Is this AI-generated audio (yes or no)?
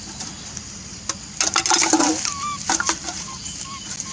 no